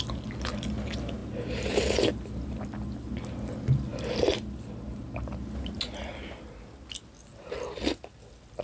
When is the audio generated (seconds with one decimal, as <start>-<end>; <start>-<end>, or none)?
none

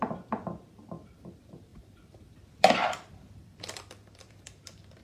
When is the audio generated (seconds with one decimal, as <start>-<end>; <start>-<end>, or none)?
1.7-4.3

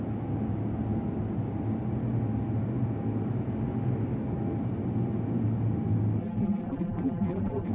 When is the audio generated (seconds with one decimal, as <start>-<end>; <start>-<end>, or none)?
6.2-7.7

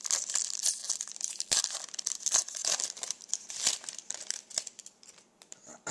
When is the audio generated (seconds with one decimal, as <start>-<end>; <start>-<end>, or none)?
0.0-0.8; 1.6-5.9

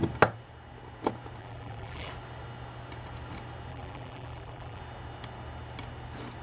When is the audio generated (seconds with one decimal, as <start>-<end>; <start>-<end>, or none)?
1.4-2.1; 3.7-4.8

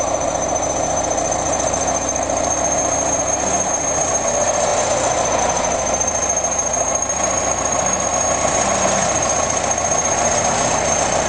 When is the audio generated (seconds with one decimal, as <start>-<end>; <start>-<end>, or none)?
none

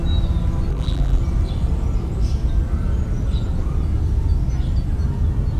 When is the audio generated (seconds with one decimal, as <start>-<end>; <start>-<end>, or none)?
0.7-1.2

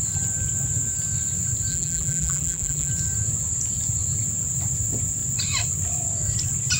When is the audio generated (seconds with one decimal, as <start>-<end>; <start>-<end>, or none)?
1.7-2.9